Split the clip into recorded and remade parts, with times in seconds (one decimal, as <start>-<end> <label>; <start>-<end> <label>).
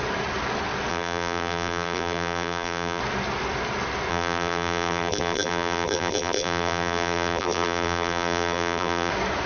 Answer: 0.0-0.9 recorded; 0.9-3.0 remade; 3.0-4.1 recorded; 4.1-9.1 remade; 9.1-9.5 recorded